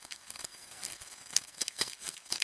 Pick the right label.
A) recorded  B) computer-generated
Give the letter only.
B